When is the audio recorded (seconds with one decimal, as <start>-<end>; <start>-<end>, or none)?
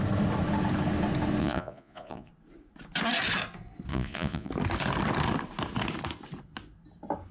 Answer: 0.0-1.4; 2.3-3.9; 4.5-7.3